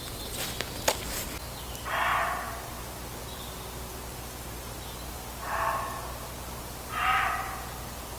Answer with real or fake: real